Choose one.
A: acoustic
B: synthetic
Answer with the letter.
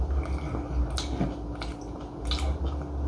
A